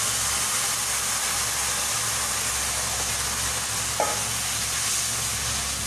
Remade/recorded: recorded